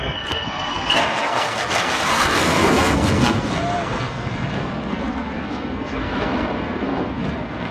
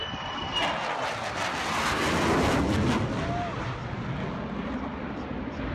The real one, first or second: second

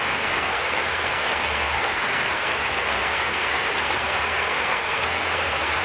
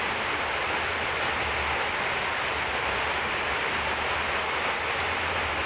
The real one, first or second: second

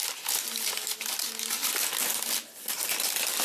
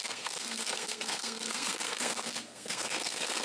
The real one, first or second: first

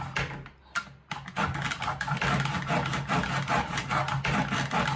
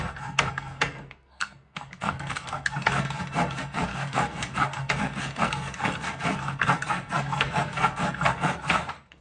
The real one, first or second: first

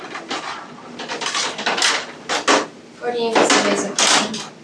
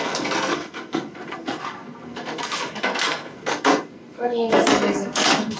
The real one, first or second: first